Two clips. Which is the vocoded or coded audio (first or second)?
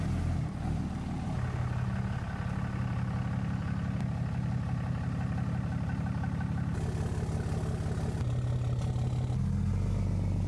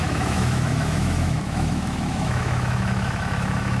second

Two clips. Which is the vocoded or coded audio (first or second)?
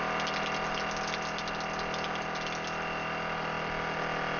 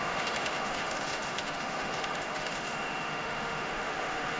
second